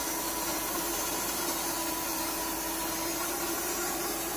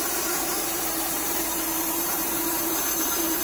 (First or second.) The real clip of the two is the first